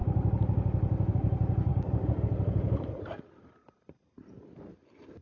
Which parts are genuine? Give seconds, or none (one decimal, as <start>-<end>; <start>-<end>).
0.0-1.7; 4.8-5.2